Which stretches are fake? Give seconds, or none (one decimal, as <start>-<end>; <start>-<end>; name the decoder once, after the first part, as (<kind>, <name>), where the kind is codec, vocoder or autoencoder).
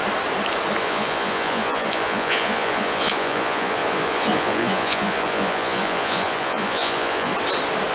0.8-7.3 (vocoder, Vocos)